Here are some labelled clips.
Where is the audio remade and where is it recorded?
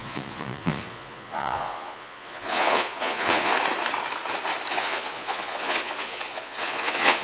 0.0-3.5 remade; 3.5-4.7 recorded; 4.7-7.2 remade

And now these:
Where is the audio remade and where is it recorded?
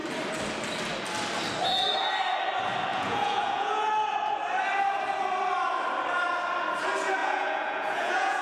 0.0-2.9 recorded; 2.9-3.9 remade; 3.9-7.2 recorded; 7.2-8.4 remade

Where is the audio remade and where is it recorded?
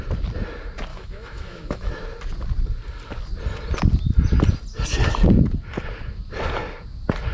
0.0-0.9 recorded; 0.9-1.9 remade; 1.9-7.3 recorded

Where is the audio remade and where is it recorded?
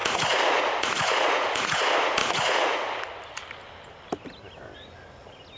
0.0-1.8 remade; 1.8-2.2 recorded; 2.2-2.9 remade; 2.9-5.6 recorded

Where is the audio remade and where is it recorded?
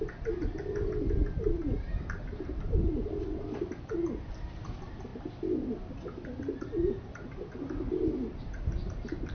0.0-9.3 recorded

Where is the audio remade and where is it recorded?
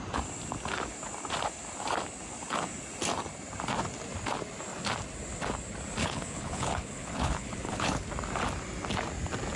0.0-6.0 recorded; 6.0-8.1 remade; 8.1-9.6 recorded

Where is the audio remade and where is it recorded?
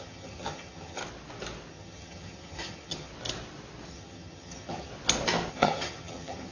0.0-1.0 remade; 1.0-1.7 recorded; 1.7-3.1 remade; 3.1-3.9 recorded; 3.9-4.9 remade; 4.9-5.5 recorded; 5.5-6.5 remade